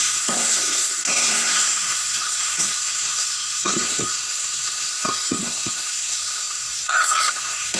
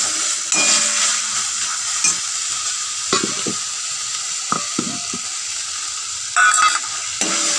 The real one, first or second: second